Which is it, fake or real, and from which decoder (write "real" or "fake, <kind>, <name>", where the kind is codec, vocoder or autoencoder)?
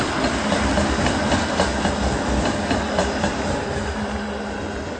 real